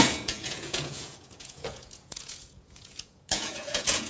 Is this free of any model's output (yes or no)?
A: no